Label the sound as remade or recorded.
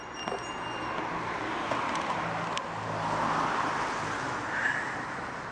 recorded